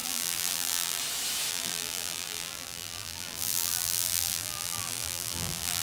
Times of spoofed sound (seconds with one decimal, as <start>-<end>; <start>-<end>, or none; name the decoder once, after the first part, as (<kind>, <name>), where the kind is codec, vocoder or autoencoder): 0.0-1.0 (vocoder, BigVGAN v2); 1.5-5.8